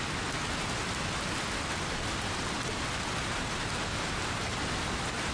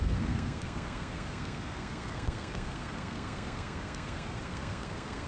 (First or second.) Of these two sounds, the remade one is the second